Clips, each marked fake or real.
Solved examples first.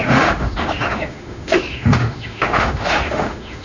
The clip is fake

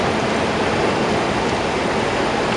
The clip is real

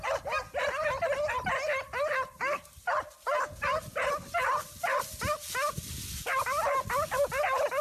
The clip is real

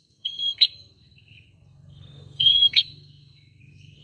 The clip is fake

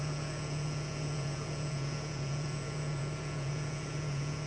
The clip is fake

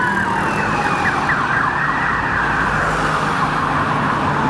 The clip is real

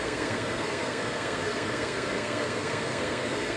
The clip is fake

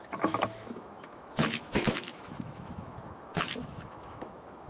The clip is fake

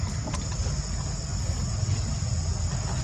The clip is real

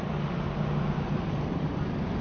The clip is real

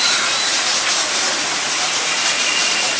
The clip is fake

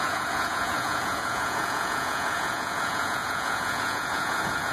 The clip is fake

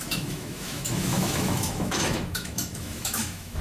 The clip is fake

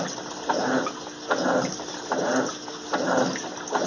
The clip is real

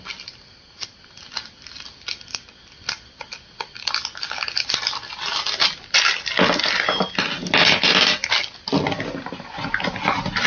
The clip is real